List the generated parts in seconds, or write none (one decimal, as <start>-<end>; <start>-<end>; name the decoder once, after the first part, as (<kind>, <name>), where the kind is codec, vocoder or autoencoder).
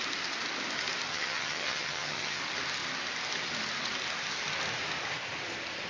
1.1-2.4 (vocoder, HiFi-GAN)